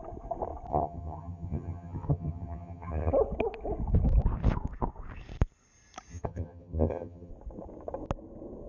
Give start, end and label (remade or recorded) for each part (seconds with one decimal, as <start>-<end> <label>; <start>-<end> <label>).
0.0-0.7 recorded; 0.7-3.1 remade; 3.1-6.1 recorded; 6.1-7.3 remade; 7.3-8.7 recorded